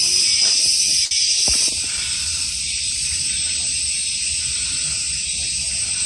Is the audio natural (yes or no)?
yes